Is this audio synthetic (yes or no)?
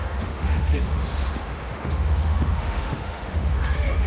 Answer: yes